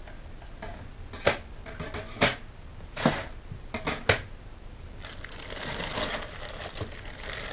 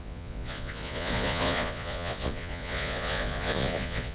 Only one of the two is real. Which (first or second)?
first